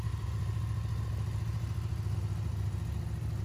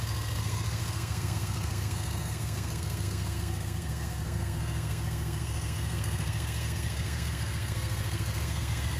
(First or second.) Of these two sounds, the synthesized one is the second